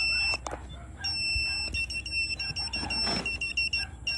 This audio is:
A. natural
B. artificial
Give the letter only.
A